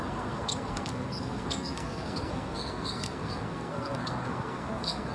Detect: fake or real fake